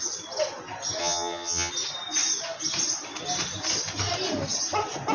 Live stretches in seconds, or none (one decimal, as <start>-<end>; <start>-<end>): 0.0-1.0; 1.7-5.1